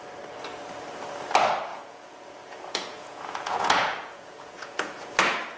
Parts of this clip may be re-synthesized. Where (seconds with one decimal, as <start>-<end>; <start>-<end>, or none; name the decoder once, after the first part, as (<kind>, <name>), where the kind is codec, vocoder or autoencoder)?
1.7-5.1 (vocoder, Vocos)